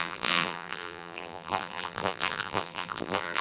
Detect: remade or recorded remade